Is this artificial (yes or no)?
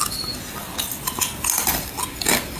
no